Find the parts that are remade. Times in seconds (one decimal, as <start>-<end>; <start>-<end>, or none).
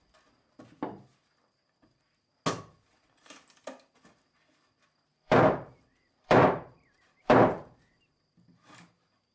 5.1-8.9